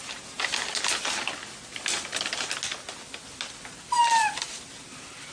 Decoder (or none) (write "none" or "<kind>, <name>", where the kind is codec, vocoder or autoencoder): none